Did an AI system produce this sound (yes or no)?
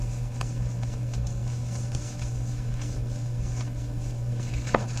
yes